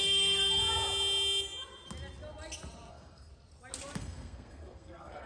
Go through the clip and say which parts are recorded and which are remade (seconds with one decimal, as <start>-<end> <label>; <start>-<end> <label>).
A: 0.0-0.6 remade; 0.6-2.9 recorded; 2.9-3.3 remade; 3.3-4.0 recorded; 4.0-5.3 remade